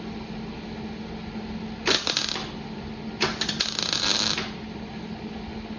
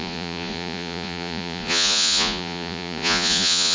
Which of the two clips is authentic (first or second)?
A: first